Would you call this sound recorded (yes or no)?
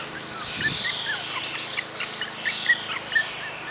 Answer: yes